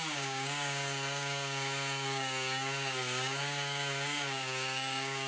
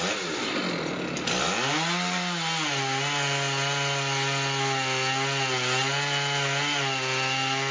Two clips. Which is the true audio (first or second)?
second